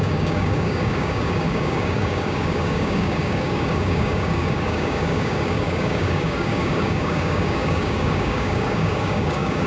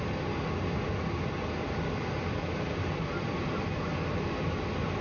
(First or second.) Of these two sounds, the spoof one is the first